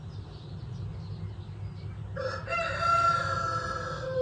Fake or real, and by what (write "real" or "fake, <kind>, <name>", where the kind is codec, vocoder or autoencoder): real